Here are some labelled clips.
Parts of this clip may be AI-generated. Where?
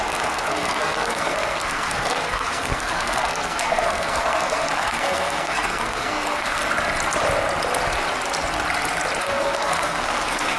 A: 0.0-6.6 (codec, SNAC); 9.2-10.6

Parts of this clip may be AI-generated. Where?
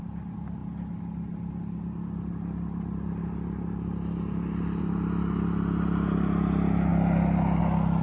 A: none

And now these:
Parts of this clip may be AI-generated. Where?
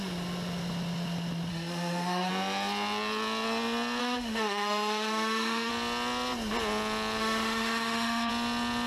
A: 1.5-2.3 (autoencoder, DAC-VAE); 4.0-5.7; 7.2-8.3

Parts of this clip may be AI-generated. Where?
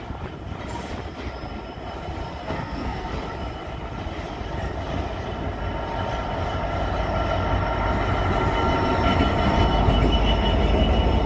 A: 2.4-3.1 (codec, SNAC)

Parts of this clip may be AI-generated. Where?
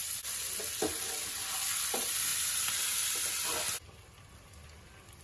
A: none